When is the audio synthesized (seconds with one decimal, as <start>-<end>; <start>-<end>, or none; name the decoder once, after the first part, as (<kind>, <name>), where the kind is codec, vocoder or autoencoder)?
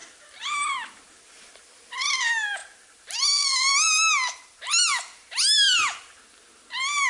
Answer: none